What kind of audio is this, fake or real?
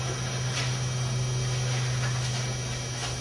real